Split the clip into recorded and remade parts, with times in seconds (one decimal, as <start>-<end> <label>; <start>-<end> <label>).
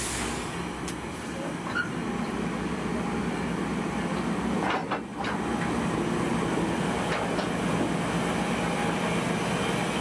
0.0-10.0 recorded